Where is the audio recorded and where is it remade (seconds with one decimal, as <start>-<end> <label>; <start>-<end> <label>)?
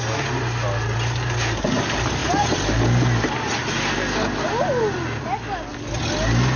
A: 0.0-6.6 recorded